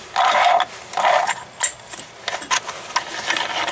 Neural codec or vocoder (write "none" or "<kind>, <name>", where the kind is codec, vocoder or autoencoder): none